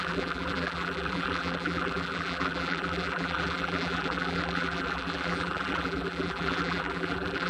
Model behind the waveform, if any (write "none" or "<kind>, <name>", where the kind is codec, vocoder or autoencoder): vocoder, BigVGAN v2